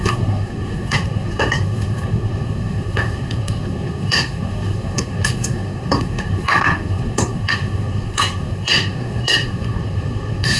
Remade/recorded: remade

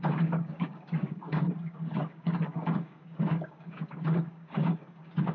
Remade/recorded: remade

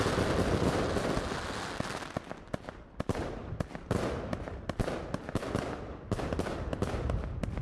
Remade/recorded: recorded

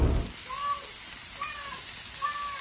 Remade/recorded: recorded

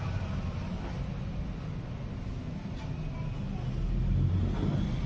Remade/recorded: recorded